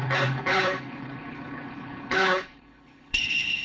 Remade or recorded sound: remade